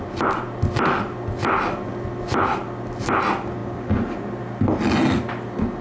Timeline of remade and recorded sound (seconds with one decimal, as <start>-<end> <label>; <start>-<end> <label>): 0.0-5.8 recorded